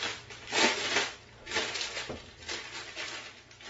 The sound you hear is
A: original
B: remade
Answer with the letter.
A